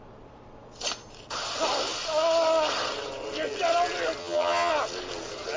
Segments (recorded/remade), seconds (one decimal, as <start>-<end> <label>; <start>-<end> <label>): 0.0-4.2 recorded; 4.2-4.7 remade; 4.7-5.6 recorded